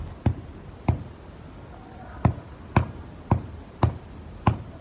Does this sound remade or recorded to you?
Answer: recorded